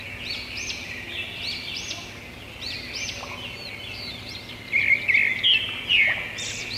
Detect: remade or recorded recorded